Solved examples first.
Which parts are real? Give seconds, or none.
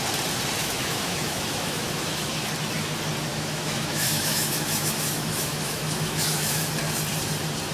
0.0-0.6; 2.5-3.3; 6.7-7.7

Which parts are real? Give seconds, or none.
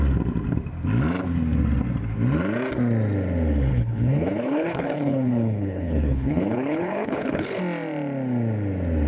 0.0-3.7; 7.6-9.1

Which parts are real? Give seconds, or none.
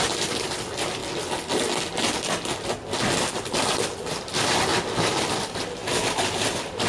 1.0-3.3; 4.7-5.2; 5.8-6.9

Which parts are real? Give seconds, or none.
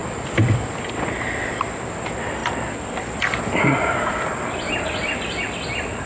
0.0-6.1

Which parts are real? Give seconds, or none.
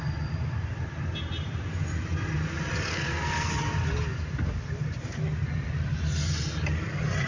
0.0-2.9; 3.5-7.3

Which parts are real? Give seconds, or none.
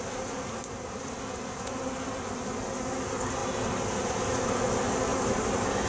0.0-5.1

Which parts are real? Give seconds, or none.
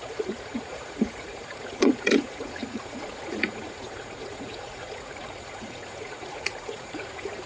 none